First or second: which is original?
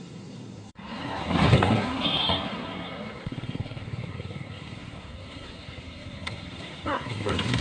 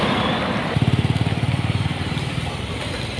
second